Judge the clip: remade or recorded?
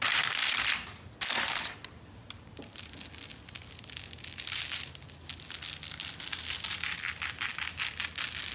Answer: recorded